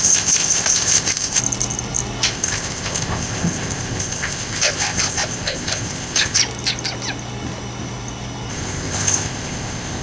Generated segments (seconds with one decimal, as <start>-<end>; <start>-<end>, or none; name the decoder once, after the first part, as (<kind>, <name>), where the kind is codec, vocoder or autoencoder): 0.0-1.4 (codec, ZipCodec); 2.3-6.4; 8.5-10.0